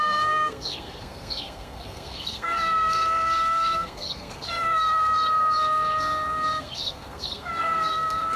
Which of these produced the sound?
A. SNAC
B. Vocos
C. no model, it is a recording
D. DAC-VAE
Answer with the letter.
A